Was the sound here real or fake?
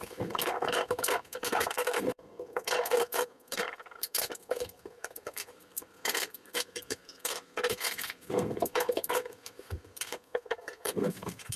fake